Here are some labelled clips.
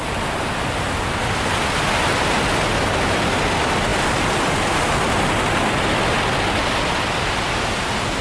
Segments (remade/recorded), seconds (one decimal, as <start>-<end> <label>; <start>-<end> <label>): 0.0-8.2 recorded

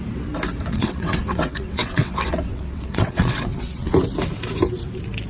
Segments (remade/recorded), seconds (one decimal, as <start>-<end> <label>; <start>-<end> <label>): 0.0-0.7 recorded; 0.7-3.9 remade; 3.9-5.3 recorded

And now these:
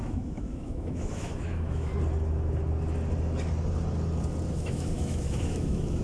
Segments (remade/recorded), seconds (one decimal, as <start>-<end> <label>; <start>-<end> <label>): 0.0-1.9 remade; 1.9-4.5 recorded; 4.5-6.0 remade